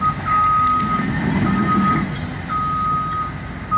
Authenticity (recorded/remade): recorded